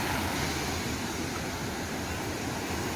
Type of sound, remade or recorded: recorded